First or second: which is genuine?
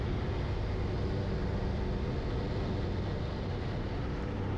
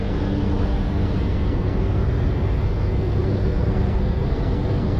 first